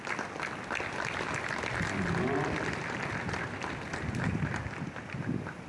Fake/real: real